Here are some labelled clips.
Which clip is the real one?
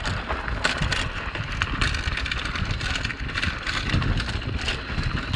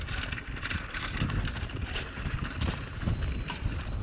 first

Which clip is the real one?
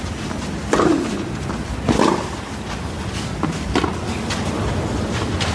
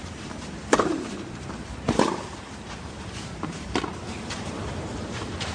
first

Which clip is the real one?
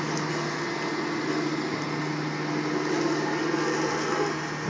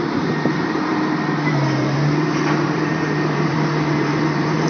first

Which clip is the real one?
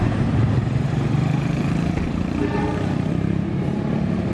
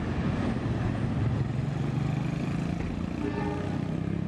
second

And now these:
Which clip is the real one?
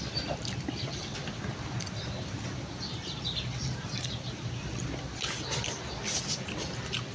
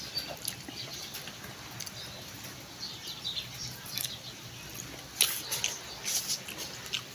second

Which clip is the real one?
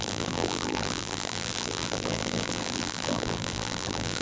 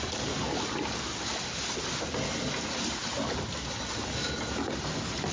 second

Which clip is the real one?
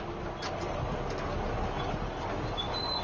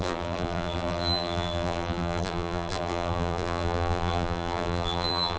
first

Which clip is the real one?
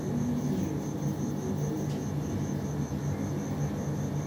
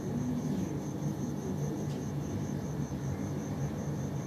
first